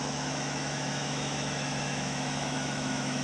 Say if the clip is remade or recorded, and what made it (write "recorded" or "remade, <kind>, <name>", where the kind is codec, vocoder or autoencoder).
remade, autoencoder, DAC-VAE